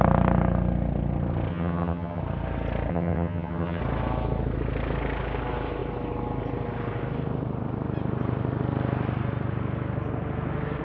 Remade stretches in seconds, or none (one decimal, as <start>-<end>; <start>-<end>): 1.5-2.2; 2.9-3.8